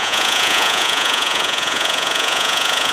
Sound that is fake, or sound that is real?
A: fake